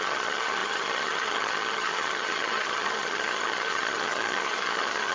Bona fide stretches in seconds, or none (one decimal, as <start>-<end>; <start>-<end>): none